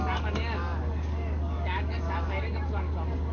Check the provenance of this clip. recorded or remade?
remade